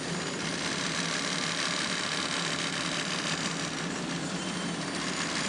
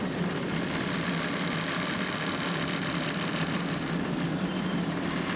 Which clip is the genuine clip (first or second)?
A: first